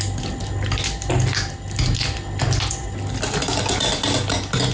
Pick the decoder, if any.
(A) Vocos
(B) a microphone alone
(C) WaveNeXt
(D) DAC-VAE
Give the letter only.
B